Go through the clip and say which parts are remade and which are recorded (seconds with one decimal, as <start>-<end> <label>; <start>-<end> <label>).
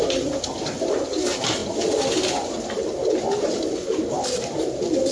0.0-5.1 recorded